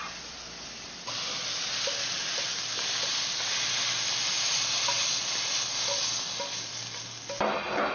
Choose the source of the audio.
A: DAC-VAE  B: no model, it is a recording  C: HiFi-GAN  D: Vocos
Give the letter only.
B